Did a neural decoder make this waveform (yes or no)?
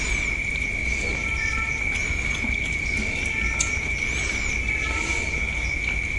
no